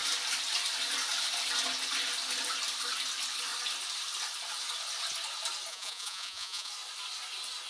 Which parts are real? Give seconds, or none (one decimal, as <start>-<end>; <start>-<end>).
0.0-5.7; 6.7-7.7